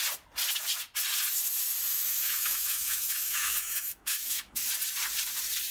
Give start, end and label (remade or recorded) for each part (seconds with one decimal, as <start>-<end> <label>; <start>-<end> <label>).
0.0-1.9 recorded; 1.9-4.6 remade; 4.6-5.7 recorded